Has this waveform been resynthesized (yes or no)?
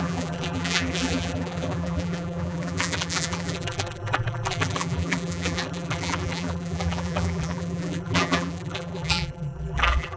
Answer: yes